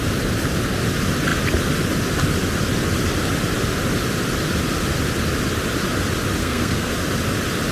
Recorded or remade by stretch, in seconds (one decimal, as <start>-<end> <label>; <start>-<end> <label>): 0.0-6.4 recorded; 6.4-6.9 remade; 6.9-7.7 recorded